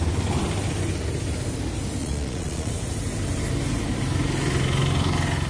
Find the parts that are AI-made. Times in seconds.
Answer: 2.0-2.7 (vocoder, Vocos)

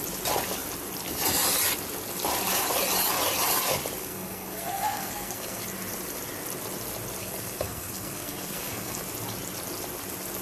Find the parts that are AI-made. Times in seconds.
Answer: 4.0-5.6 (codec, SNAC); 7.2-9.0